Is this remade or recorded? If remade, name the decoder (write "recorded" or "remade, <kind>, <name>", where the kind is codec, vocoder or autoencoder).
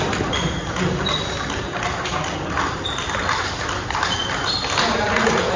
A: recorded